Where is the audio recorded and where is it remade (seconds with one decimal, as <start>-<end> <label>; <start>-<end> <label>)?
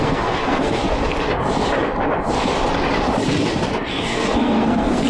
0.0-0.8 remade; 0.8-3.9 recorded; 3.9-5.1 remade